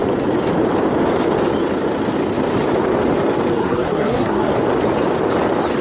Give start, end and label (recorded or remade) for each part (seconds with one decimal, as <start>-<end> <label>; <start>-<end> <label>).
0.0-3.5 recorded; 3.5-4.5 remade; 4.5-5.8 recorded